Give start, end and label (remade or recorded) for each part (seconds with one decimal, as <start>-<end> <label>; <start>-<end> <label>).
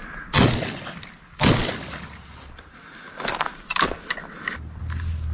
0.0-5.3 recorded